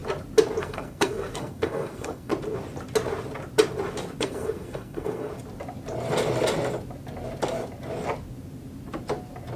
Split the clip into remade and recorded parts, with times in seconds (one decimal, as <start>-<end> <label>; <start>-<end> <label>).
0.0-0.6 recorded; 0.6-2.3 remade; 2.3-4.2 recorded; 4.2-5.3 remade; 5.3-9.6 recorded